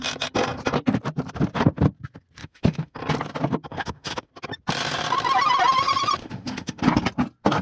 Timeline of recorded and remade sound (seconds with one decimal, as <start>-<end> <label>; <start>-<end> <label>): 0.0-2.4 recorded; 2.4-3.0 remade; 3.0-3.7 recorded; 3.7-4.3 remade; 4.3-6.2 recorded; 6.2-6.8 remade; 6.8-7.6 recorded